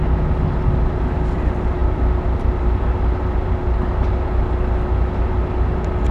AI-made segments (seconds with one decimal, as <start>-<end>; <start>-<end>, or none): none